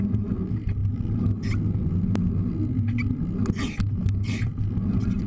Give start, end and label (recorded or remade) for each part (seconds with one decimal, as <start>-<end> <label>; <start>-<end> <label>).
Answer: 0.0-5.3 recorded

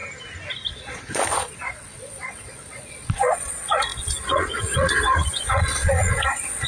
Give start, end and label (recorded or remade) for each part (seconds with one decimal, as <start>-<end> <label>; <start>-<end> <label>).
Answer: 0.0-0.7 recorded; 0.7-6.7 remade